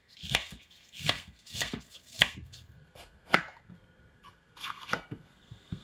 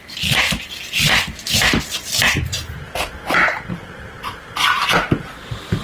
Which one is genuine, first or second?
second